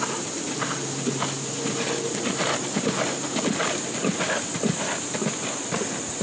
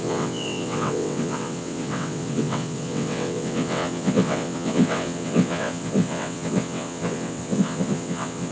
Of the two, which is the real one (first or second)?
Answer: first